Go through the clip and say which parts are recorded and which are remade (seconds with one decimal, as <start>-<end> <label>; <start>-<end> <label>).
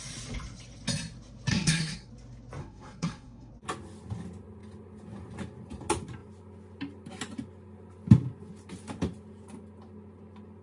0.0-1.5 recorded; 1.5-2.1 remade; 2.1-2.6 recorded; 2.6-3.5 remade; 3.5-10.6 recorded